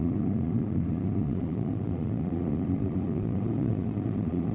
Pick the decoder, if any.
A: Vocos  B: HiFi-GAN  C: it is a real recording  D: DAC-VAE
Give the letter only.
A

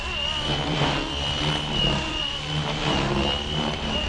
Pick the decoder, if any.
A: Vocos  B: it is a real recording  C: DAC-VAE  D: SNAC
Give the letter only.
B